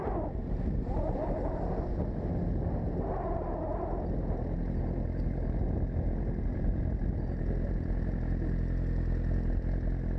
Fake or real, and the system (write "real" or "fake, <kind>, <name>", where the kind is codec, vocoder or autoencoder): real